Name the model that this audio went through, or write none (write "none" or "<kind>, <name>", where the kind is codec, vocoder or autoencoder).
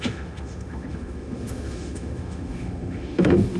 autoencoder, DAC-VAE